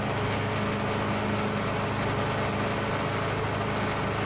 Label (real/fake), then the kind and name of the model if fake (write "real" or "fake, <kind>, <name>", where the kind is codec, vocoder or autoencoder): real